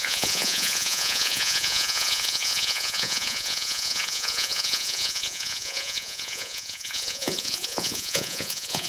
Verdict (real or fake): fake